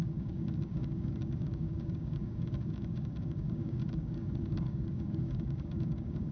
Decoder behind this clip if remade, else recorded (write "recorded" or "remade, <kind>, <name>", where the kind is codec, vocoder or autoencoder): remade, codec, DAC